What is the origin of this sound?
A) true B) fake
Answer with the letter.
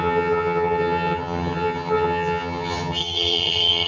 B